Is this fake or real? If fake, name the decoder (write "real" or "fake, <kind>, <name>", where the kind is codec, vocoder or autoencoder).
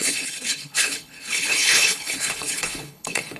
fake, codec, HILCodec